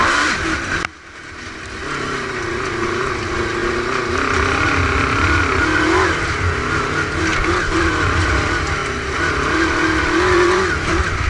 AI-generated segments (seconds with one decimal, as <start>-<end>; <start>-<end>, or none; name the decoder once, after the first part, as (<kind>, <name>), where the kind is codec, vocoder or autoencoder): none